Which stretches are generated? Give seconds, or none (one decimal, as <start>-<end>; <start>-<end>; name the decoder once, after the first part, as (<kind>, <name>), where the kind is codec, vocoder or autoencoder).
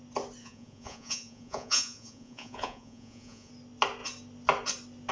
0.4-3.5 (vocoder, Vocos)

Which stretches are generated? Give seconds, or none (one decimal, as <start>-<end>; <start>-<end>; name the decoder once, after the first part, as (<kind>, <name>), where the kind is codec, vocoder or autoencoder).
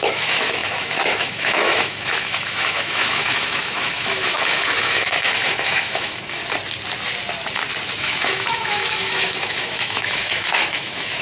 0.0-6.4 (autoencoder, DAC-VAE); 8.0-11.2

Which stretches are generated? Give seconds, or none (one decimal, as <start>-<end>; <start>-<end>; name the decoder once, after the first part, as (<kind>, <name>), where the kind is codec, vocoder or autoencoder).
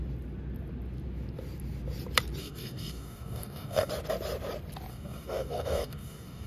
2.4-3.9 (codec, DAC); 4.9-6.5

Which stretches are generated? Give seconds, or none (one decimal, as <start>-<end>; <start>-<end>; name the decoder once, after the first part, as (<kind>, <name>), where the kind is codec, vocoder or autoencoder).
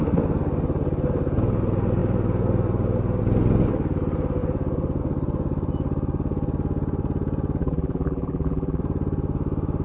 7.6-8.8 (vocoder, BigVGAN v2)